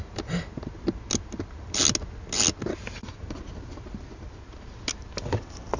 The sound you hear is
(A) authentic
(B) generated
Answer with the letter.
A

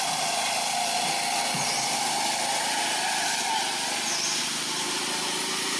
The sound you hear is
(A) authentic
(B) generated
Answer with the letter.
A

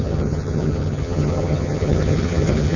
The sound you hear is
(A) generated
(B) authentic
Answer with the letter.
A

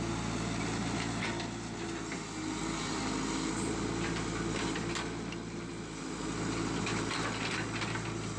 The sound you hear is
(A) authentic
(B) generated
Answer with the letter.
A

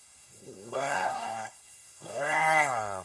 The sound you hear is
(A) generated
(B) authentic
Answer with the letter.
A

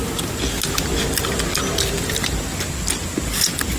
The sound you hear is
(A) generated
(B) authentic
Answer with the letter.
B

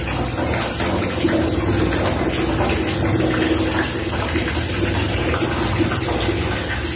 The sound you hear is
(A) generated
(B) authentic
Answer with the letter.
B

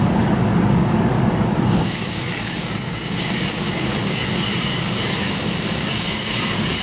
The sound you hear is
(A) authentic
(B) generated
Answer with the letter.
B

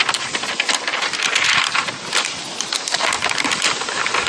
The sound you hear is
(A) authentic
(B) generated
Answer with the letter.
A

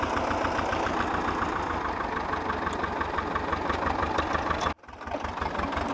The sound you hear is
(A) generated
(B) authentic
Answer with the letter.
B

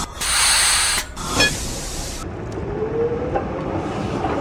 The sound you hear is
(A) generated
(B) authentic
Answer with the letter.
B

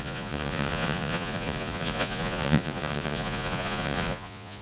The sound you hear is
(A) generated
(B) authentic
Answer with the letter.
A